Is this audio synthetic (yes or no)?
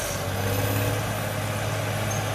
no